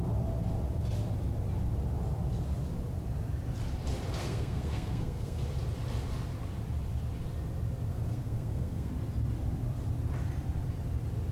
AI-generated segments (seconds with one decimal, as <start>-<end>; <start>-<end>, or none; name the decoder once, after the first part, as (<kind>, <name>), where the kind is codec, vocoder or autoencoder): 4.2-5.4 (codec, SNAC); 7.9-8.9